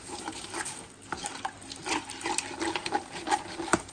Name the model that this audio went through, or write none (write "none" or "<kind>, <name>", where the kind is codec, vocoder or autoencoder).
none